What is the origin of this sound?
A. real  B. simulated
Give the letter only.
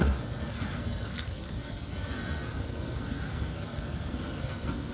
B